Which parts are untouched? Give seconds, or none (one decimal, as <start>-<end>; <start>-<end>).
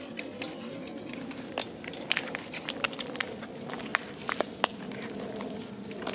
0.0-6.1